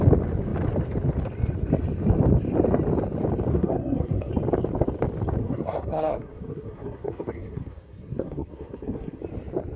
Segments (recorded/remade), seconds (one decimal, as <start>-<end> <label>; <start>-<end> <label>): 0.0-3.5 recorded; 3.5-4.3 remade; 4.3-5.4 recorded; 5.4-9.2 remade; 9.2-9.8 recorded